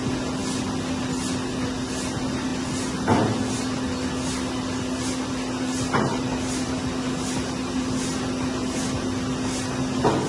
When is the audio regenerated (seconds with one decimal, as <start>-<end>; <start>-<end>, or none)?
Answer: none